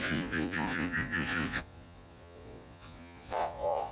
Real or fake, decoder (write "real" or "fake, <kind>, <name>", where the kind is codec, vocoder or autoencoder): fake, vocoder, Vocos